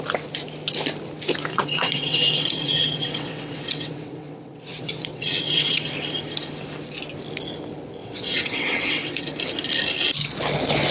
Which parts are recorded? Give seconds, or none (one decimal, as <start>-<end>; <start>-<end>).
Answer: 0.0-1.5; 5.9-8.0; 9.3-10.9